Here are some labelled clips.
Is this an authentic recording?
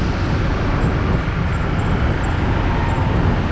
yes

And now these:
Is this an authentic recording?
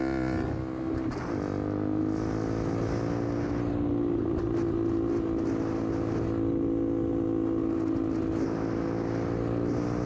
yes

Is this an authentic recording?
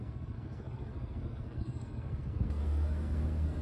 no